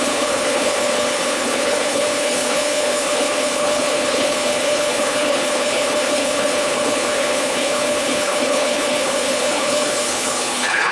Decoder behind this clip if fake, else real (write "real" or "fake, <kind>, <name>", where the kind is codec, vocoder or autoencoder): fake, codec, HILCodec